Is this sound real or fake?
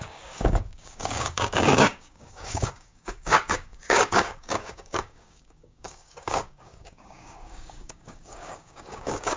fake